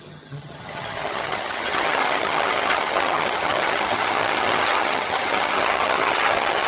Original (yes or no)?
no